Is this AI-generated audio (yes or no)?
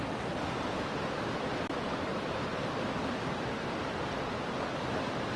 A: no